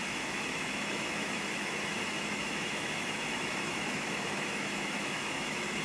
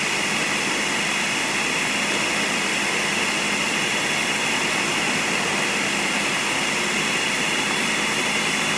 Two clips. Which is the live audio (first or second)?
second